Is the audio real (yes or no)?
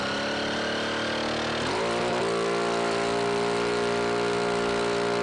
yes